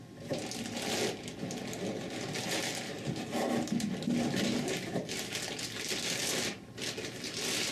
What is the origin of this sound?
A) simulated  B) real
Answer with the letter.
B